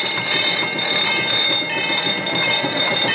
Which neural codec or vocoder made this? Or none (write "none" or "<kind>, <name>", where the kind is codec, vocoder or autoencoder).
none